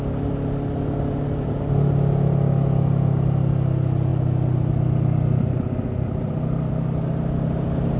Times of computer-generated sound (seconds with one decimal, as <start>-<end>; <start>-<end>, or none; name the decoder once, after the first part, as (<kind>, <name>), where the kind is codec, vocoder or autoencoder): none